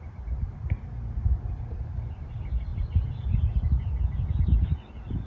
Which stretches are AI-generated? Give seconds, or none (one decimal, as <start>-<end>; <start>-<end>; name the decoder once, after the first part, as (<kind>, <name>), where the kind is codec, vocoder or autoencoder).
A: none